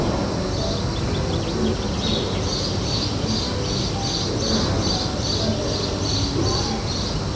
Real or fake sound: real